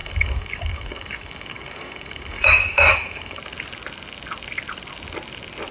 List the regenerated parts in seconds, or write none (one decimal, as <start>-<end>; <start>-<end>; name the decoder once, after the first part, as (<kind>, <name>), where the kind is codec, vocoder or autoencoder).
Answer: 0.0-3.4 (codec, DAC)